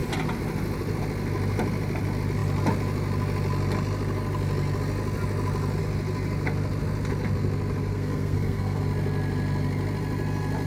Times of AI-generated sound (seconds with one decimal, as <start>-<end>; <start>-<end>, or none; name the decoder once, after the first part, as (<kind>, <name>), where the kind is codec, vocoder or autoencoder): 7.9-8.8 (codec, SNAC)